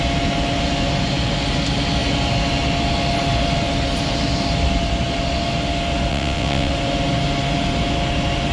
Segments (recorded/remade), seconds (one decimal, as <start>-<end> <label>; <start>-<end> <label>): 0.0-6.1 recorded; 6.1-6.7 remade; 6.7-8.5 recorded